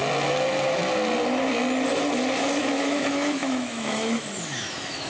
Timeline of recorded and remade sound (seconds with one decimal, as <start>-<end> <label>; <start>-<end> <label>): 0.0-2.6 recorded; 2.6-5.1 remade

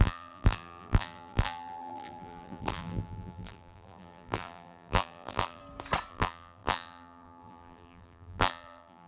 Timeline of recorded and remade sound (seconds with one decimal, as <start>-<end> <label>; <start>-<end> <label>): 0.0-5.6 remade; 5.6-6.1 recorded; 6.1-9.1 remade

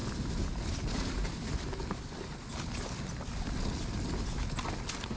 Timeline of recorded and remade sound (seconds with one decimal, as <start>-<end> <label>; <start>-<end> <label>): 0.0-5.2 recorded

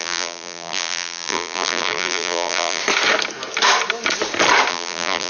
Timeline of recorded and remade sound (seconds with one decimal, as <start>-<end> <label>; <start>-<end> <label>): 0.0-2.8 remade; 2.8-4.7 recorded; 4.7-5.3 remade

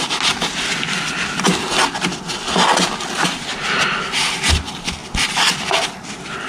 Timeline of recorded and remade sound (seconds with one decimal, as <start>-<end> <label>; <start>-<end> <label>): 0.0-6.5 recorded